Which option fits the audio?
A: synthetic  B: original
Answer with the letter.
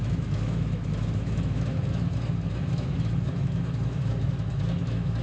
A